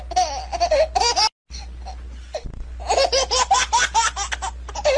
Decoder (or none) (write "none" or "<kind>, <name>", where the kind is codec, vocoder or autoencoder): none